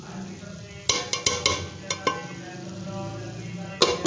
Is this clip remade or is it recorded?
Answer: recorded